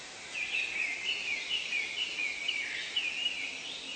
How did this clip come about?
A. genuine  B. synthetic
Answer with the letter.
A